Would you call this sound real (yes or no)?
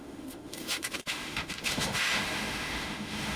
no